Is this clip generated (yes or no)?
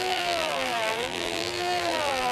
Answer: yes